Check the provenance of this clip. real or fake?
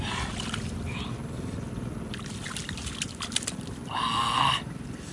real